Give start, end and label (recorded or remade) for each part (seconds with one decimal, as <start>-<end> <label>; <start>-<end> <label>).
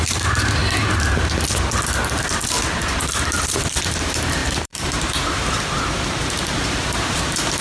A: 0.0-0.6 remade; 0.6-3.0 recorded; 3.0-7.6 remade